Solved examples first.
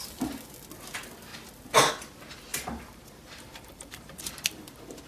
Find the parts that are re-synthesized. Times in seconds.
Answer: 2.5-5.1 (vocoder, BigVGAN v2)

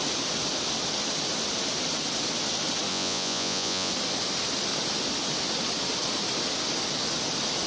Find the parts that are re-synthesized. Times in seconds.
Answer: 2.9-3.9 (vocoder, Vocos)

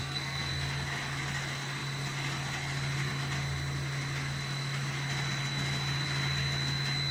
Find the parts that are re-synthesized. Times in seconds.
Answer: 0.0-0.5 (codec, SNAC)